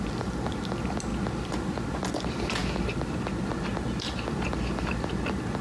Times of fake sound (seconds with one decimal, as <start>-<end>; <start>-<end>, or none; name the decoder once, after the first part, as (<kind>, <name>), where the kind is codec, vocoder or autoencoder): none